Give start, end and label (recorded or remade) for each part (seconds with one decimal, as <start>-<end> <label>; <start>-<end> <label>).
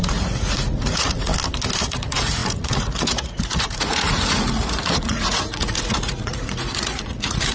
0.0-1.3 remade; 1.3-1.8 recorded; 1.8-7.5 remade